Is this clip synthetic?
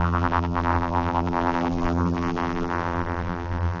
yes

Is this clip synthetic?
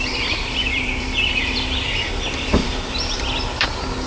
yes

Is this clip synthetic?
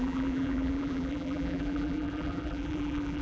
yes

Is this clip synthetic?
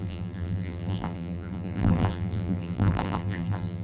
yes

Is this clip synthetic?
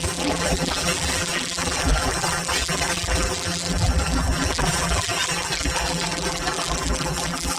yes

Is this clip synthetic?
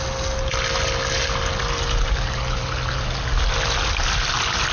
no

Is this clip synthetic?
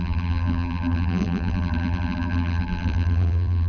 yes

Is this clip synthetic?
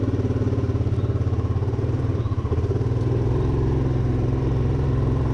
yes